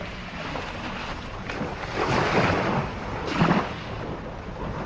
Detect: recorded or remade recorded